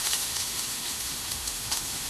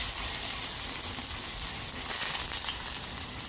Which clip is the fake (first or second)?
first